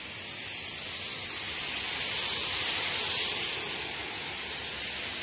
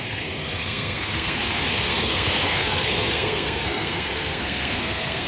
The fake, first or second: second